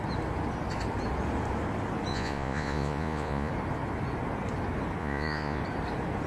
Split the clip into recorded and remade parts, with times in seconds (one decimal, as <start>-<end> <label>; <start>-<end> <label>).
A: 0.0-2.1 recorded; 2.1-3.5 remade; 3.5-5.0 recorded; 5.0-5.6 remade; 5.6-6.3 recorded